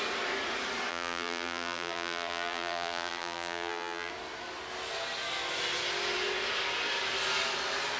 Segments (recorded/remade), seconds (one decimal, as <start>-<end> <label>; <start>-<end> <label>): 0.0-0.9 recorded; 0.9-4.1 remade; 4.1-8.0 recorded